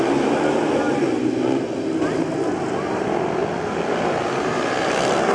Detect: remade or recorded recorded